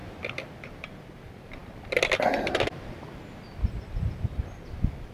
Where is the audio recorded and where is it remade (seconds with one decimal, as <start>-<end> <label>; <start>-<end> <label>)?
0.0-5.1 recorded